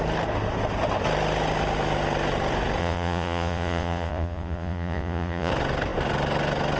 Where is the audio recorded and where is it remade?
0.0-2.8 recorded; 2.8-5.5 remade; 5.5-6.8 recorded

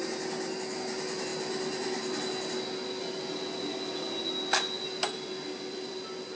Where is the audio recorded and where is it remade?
0.0-6.3 recorded

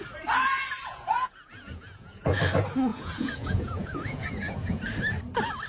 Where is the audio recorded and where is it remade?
0.0-0.9 recorded; 0.9-2.4 remade; 2.4-2.9 recorded; 2.9-4.8 remade; 4.8-5.7 recorded

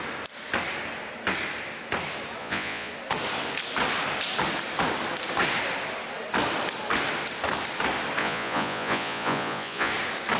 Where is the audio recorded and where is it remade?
0.0-2.4 recorded; 2.4-2.9 remade; 2.9-8.2 recorded; 8.2-9.9 remade; 9.9-10.4 recorded

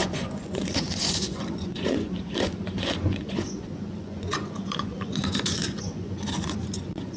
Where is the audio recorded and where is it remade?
0.0-7.2 remade

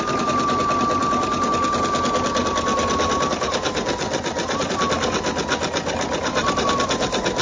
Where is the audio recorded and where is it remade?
0.0-7.4 recorded